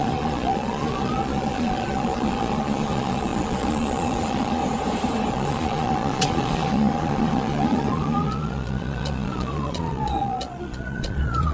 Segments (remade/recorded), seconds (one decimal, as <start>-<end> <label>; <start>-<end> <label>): 0.0-4.6 remade; 4.6-5.3 recorded; 5.3-11.5 remade